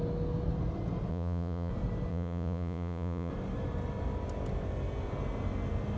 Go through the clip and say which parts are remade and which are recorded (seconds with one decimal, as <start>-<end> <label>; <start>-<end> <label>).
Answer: 0.0-1.1 recorded; 1.1-1.7 remade; 1.7-2.1 recorded; 2.1-3.3 remade; 3.3-6.0 recorded